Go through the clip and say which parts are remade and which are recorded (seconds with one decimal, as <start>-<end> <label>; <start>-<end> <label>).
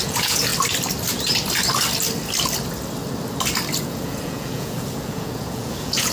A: 0.0-0.5 remade; 0.5-3.8 recorded; 3.8-6.1 remade